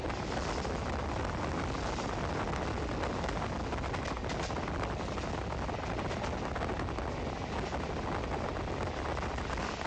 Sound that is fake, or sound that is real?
real